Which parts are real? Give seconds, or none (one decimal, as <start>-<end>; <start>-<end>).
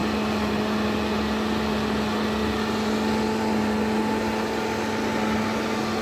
0.0-6.0